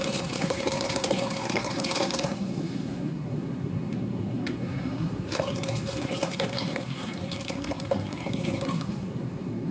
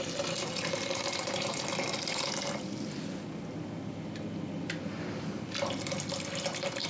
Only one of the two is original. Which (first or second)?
second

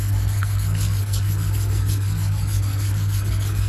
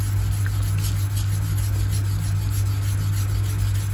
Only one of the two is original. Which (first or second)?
second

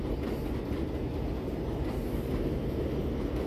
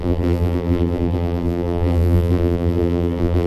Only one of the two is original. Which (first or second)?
first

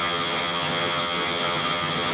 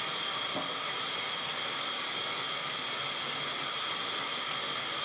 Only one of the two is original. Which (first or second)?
second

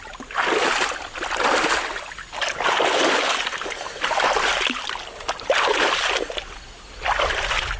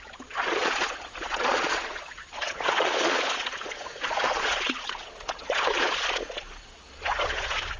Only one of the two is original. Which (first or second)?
first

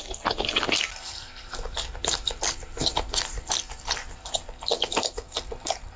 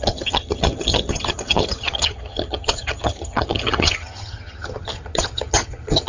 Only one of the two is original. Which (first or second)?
first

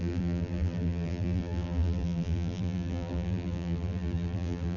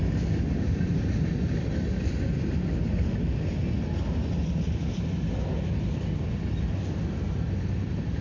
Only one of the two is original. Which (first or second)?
second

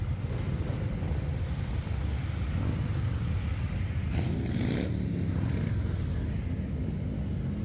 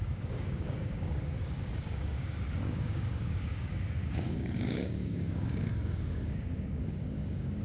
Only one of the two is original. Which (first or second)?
first